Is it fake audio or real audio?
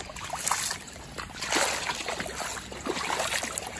real